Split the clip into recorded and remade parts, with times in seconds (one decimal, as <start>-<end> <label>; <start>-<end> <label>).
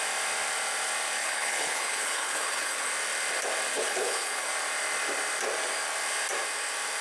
0.0-1.2 recorded; 1.2-2.9 remade; 2.9-3.7 recorded; 3.7-4.5 remade; 4.5-7.0 recorded